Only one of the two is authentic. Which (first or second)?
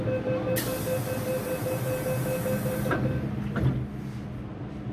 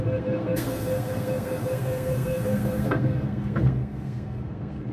first